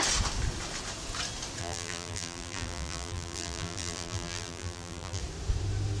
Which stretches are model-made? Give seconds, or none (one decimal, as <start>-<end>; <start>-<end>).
1.6-5.2